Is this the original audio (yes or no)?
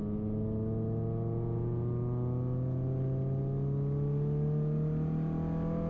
yes